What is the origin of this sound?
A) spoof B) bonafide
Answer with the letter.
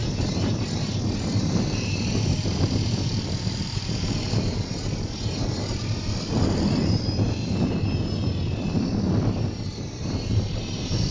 B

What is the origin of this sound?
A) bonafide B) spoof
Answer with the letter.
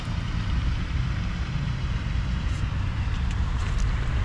B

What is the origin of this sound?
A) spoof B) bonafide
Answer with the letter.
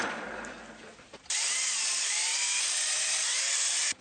A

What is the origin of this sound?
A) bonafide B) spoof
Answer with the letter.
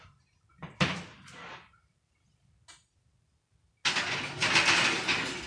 A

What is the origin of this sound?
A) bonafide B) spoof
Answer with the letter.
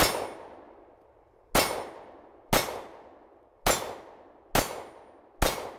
A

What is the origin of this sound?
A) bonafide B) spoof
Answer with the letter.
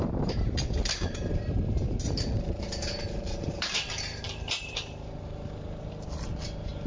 B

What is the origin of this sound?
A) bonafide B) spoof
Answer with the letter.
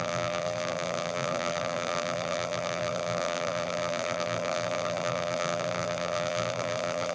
B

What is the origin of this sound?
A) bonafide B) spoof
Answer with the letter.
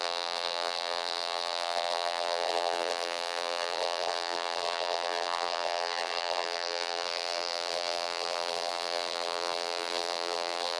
B